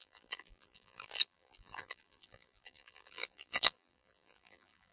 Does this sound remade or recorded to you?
remade